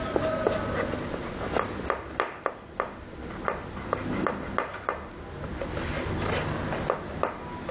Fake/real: real